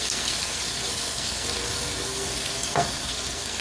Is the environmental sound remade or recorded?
remade